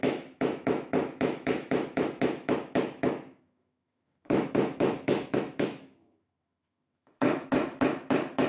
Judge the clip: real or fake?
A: fake